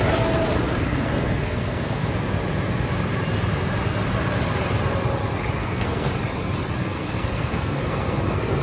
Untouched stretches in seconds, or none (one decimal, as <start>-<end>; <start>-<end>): 0.0-0.9; 2.1-5.6; 6.1-6.8

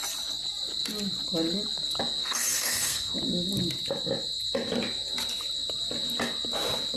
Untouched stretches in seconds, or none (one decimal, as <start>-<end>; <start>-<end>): 0.0-2.2; 3.1-7.0

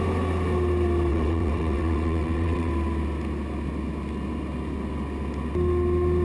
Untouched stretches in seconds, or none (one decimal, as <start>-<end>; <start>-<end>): 0.0-1.1; 2.7-6.2

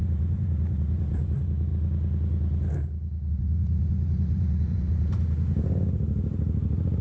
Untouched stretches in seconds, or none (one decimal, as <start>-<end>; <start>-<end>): 1.7-3.3

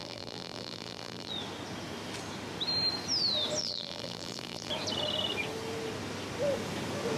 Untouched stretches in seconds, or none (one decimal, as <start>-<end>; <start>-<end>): 1.3-3.6; 4.7-7.2

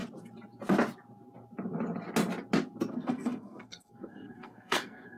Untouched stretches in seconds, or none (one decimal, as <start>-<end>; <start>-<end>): 0.0-2.9

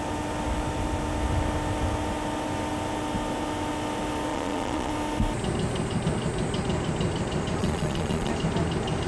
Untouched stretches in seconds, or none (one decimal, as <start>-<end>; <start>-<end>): 0.0-4.3; 4.9-7.6; 8.3-9.1

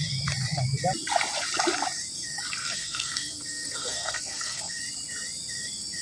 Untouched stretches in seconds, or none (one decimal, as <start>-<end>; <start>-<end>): 0.0-2.6; 4.8-6.0